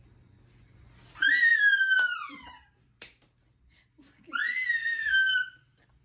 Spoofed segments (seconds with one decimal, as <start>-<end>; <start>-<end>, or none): 1.5-5.1